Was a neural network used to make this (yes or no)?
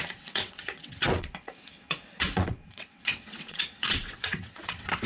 yes